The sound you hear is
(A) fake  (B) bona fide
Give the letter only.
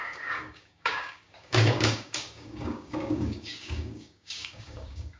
A